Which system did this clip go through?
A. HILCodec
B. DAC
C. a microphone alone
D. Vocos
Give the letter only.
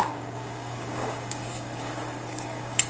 B